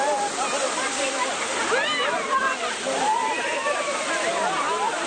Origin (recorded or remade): recorded